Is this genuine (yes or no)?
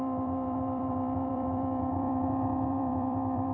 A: no